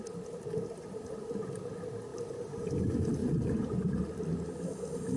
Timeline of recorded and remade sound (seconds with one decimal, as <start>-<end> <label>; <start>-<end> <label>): 0.0-3.2 recorded; 3.2-4.0 remade; 4.0-5.2 recorded